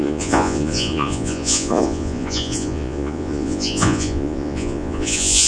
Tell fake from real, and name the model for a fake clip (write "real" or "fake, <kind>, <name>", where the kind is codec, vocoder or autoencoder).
fake, vocoder, Vocos